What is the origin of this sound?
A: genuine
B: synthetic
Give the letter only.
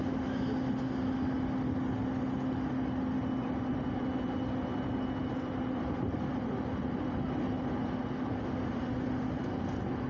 A